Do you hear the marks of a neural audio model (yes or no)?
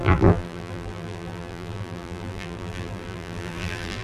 yes